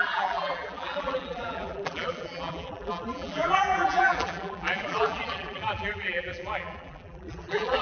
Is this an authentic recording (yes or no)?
no